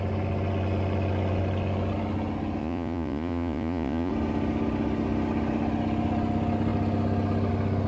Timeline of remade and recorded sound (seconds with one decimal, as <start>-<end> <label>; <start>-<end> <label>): 0.0-2.6 recorded; 2.6-4.1 remade; 4.1-7.9 recorded

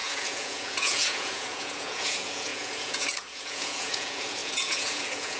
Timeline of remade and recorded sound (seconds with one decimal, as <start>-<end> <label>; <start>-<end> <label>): 0.0-5.4 remade

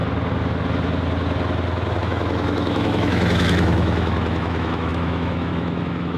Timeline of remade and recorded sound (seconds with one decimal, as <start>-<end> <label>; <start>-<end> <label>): 0.0-2.0 recorded; 2.0-6.2 remade

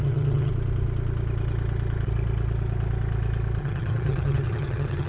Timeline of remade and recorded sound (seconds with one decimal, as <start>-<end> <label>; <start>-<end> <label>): 0.0-0.5 remade; 0.5-3.6 recorded; 3.6-5.1 remade

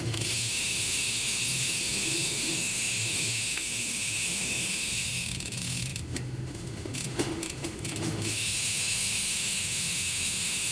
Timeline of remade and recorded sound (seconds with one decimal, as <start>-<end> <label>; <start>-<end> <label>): 0.0-10.7 remade

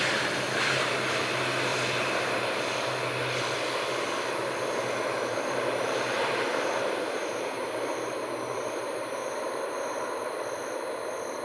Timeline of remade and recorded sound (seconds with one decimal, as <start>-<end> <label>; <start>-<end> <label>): 0.0-0.9 remade; 0.9-1.7 recorded; 1.7-2.6 remade; 2.6-5.3 recorded; 5.3-10.1 remade; 10.1-11.4 recorded

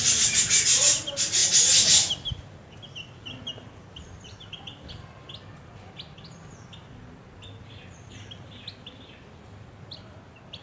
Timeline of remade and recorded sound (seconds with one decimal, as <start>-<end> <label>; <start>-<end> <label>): 0.0-10.6 recorded

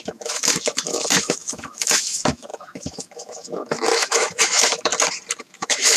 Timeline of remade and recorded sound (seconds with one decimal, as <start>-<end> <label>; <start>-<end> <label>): 0.0-4.9 remade; 4.9-5.4 recorded; 5.4-6.0 remade